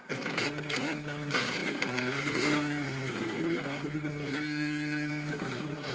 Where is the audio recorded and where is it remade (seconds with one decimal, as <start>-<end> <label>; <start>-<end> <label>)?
0.0-5.9 remade